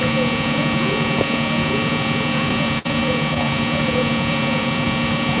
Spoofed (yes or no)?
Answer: yes